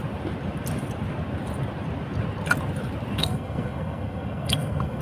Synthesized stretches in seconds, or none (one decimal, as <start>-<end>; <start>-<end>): 3.2-5.0